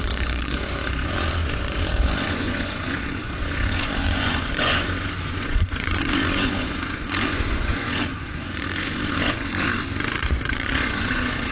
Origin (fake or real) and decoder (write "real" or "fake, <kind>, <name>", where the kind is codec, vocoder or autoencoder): fake, vocoder, Vocos